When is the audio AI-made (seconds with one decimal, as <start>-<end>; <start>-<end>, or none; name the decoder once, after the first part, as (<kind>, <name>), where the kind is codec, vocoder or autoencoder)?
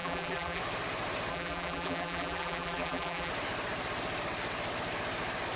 0.0-0.6 (vocoder, BigVGAN v2); 1.3-3.3